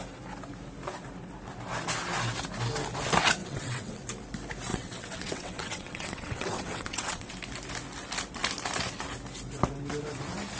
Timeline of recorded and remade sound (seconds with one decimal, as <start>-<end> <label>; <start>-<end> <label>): 0.0-3.4 recorded; 3.4-4.0 remade; 4.0-4.7 recorded; 4.7-7.3 remade; 7.3-10.6 recorded